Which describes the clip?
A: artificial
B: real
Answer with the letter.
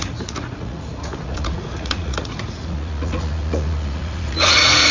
A